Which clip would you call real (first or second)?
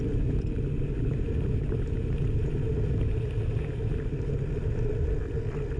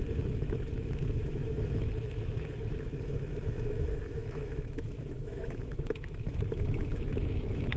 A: first